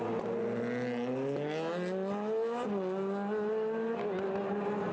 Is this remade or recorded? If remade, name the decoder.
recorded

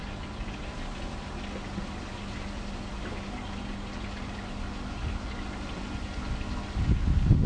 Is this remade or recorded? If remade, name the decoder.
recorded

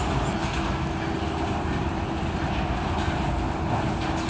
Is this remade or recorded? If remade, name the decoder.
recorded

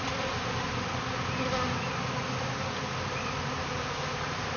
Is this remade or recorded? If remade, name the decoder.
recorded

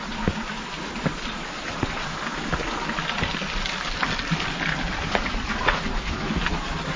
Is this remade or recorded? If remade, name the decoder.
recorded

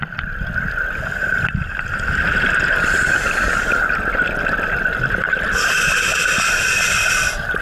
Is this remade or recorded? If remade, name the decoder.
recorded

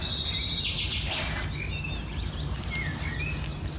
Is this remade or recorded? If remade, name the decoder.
recorded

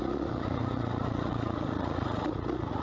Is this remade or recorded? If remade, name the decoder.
remade, vocoder, Vocos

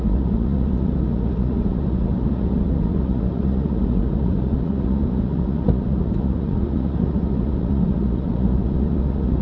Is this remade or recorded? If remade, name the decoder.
remade, vocoder, Vocos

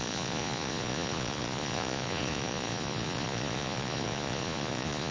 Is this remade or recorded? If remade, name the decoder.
remade, vocoder, Vocos